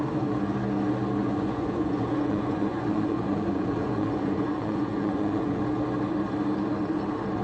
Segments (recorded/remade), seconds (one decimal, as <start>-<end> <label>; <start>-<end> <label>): 0.0-1.2 recorded; 1.2-5.6 remade; 5.6-7.4 recorded